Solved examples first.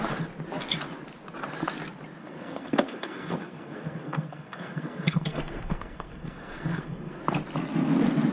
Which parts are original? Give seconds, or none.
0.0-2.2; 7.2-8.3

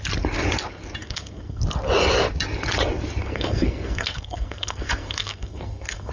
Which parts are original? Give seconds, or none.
0.0-1.0; 1.6-3.2

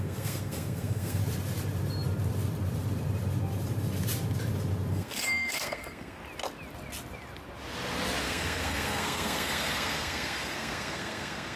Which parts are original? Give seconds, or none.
1.2-4.9; 6.2-8.2

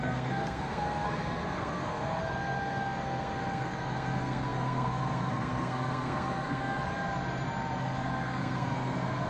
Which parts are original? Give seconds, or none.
6.9-7.8

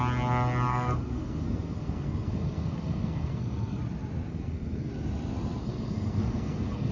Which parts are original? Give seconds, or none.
0.0-0.7; 3.8-4.3; 4.9-5.6